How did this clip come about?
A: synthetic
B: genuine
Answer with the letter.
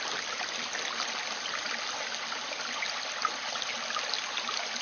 B